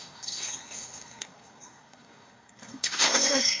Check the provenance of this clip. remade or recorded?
remade